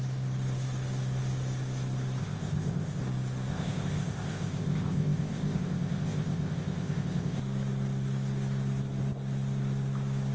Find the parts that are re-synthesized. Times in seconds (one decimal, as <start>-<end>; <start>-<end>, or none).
2.2-3.0; 3.5-7.4